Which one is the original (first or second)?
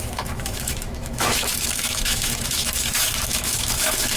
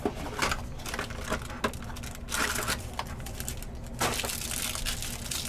second